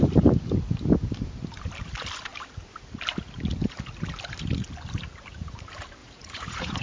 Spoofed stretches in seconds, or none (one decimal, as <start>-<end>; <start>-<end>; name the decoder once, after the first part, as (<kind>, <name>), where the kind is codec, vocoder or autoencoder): 6.0-6.8 (vocoder, Vocos)